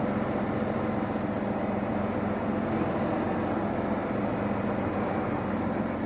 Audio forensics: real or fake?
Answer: real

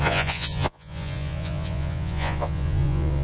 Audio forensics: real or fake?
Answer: fake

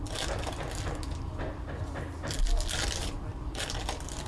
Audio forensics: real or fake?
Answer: real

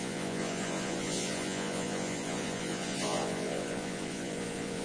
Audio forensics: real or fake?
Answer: fake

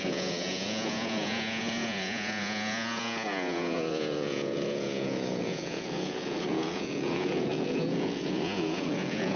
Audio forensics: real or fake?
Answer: fake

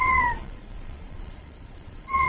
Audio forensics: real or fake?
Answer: fake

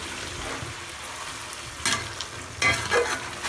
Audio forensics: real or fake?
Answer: real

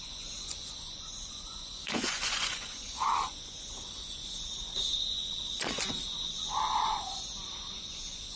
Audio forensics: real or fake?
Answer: fake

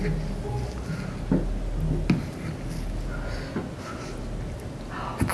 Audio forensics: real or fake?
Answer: real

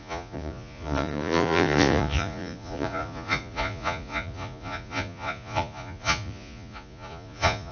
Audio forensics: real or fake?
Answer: fake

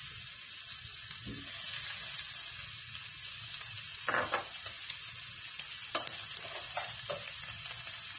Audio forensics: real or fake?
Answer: real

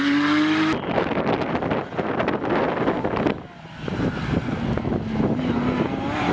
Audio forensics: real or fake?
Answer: real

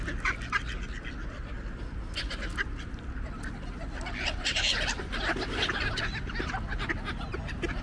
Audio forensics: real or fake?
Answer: real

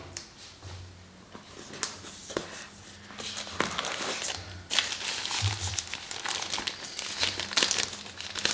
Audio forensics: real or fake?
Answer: real